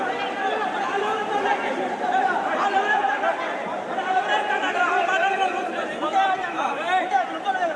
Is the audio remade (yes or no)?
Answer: yes